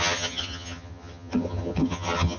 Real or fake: fake